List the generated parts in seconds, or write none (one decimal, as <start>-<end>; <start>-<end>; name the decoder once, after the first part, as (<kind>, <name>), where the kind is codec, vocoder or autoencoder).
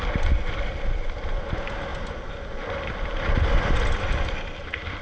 none